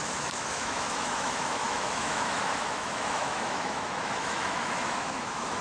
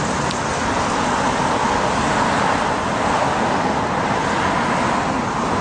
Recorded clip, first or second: second